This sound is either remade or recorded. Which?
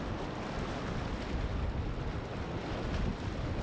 recorded